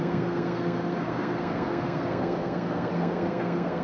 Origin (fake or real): fake